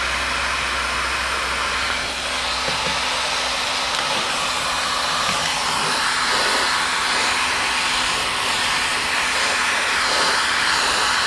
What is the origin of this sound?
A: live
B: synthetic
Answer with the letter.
A